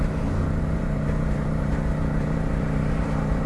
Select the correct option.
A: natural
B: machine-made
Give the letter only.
B